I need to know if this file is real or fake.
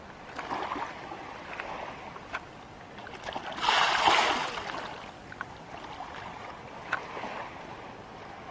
real